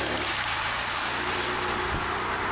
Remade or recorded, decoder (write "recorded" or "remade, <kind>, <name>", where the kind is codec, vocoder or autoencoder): recorded